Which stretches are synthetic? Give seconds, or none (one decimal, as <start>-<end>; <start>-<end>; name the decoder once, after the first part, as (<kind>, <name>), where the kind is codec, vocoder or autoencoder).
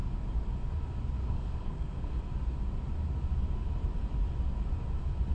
1.2-2.2 (codec, SNAC)